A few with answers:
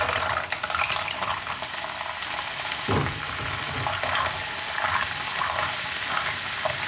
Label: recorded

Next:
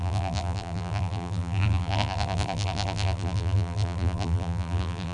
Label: remade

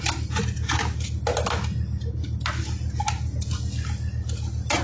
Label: recorded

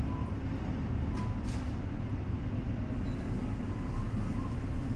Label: recorded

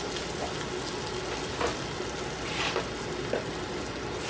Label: recorded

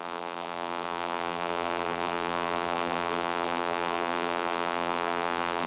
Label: remade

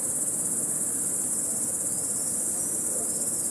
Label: recorded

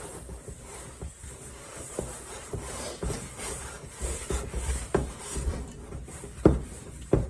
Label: remade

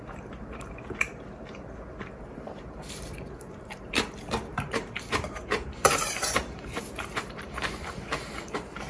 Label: remade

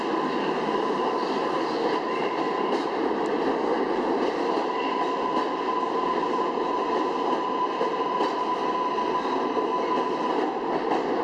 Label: recorded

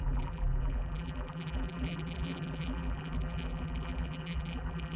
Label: remade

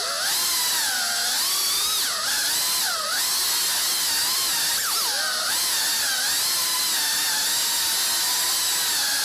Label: recorded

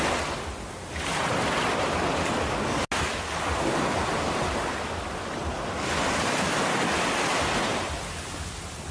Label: recorded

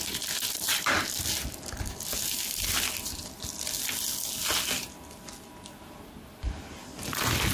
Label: recorded